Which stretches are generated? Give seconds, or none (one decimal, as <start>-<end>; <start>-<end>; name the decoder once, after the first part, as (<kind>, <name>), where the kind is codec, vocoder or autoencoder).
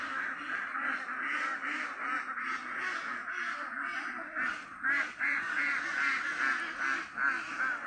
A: 5.1-6.0 (vocoder, Vocos)